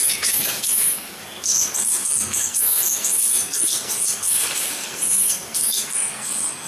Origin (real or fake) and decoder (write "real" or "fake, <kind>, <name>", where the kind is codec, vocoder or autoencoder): fake, codec, SNAC